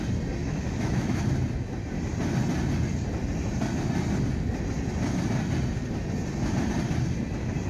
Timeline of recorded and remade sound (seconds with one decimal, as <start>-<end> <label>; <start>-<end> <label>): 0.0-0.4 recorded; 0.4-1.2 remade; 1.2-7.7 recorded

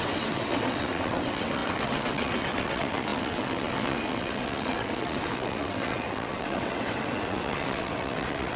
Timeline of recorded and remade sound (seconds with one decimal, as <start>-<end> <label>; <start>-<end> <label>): 0.0-8.6 remade

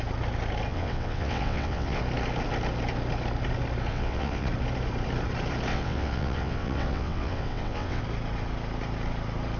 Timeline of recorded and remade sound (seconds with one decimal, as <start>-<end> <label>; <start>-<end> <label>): 0.0-0.7 recorded; 0.7-2.0 remade; 2.0-3.9 recorded; 3.9-4.5 remade; 4.5-5.7 recorded; 5.7-8.0 remade; 8.0-9.6 recorded

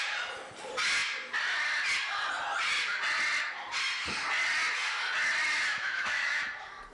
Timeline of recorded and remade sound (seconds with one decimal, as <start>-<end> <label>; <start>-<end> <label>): 0.0-5.7 recorded; 5.7-6.4 remade; 6.4-6.9 recorded